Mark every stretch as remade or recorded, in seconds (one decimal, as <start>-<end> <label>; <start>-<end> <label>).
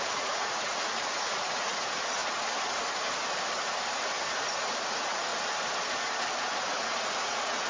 0.0-2.2 remade; 2.2-3.9 recorded; 3.9-5.3 remade; 5.3-6.6 recorded; 6.6-7.7 remade